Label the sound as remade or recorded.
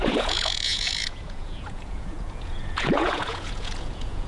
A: remade